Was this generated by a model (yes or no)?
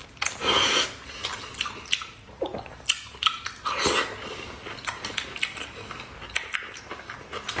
no